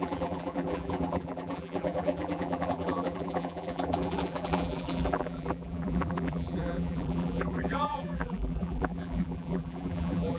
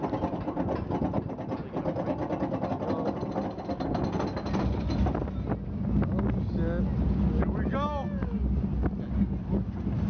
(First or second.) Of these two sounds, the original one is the second